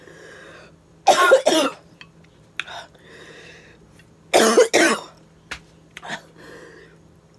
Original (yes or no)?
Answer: yes